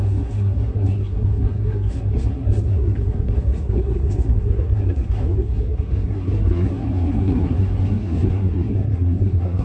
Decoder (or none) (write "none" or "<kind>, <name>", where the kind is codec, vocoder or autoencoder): codec, SNAC